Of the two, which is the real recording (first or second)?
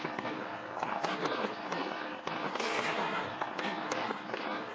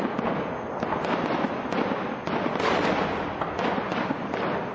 second